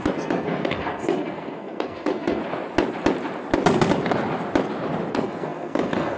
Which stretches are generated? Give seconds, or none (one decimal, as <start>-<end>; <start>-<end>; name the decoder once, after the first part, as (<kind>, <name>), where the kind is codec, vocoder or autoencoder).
0.0-2.4 (codec, SNAC); 5.1-6.2

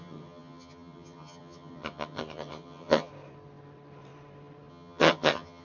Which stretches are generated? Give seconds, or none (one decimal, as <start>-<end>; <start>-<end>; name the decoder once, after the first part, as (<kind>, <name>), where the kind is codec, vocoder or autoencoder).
0.0-3.1 (vocoder, HiFi-GAN); 4.7-5.6

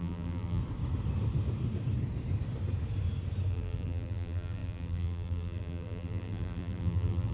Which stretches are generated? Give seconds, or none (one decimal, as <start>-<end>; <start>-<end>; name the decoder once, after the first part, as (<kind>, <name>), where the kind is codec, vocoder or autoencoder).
0.0-0.6 (vocoder, BigVGAN v2); 3.5-7.3

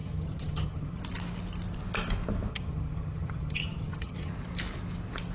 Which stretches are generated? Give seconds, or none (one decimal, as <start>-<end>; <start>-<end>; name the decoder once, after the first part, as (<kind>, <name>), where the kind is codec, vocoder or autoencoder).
0.0-1.0 (vocoder, HiFi-GAN); 2.5-4.3

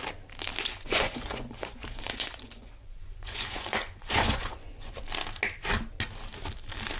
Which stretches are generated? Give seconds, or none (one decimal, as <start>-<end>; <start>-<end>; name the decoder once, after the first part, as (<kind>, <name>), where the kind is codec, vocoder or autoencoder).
0.7-4.9 (vocoder, Vocos)